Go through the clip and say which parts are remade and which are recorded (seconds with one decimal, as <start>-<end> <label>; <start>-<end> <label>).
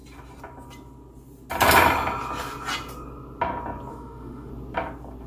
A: 0.0-3.9 recorded; 3.9-4.5 remade; 4.5-5.3 recorded